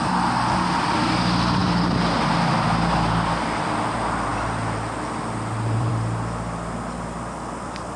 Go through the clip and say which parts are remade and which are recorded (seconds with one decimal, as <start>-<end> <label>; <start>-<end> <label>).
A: 0.0-1.6 recorded; 1.6-2.2 remade; 2.2-4.3 recorded; 4.3-5.9 remade; 5.9-8.0 recorded